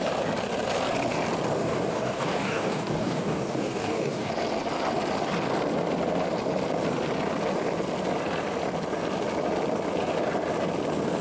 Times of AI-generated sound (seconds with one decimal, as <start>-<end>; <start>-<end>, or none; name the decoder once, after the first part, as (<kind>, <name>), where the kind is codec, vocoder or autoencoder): 1.6-4.3 (codec, DAC)